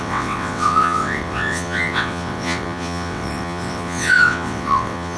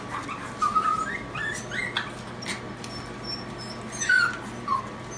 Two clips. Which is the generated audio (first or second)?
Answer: first